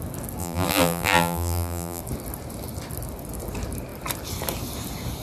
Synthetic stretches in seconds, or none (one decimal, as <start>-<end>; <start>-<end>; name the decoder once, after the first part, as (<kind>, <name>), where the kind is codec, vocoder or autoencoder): 0.4-2.0 (vocoder, BigVGAN v2)